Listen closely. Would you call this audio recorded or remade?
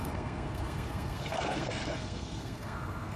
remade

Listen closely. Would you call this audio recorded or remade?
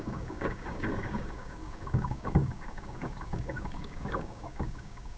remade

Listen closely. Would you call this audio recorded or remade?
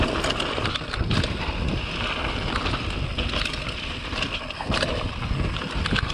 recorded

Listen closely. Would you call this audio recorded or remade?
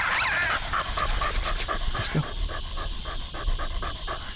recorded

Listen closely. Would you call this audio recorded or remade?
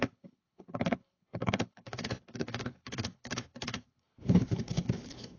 remade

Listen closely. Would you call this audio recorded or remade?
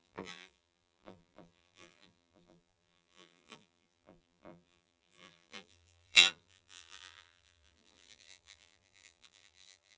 remade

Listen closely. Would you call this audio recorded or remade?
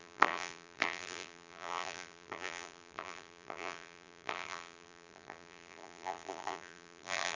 remade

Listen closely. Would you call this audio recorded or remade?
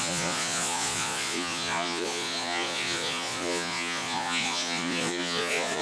remade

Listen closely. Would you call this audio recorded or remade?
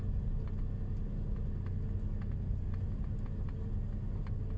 recorded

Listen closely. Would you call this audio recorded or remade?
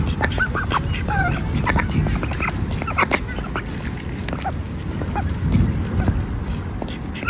recorded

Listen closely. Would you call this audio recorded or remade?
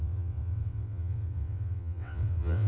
remade